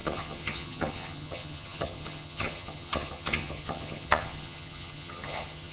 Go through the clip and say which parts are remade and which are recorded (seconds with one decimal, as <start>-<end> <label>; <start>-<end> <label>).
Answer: 0.0-5.7 remade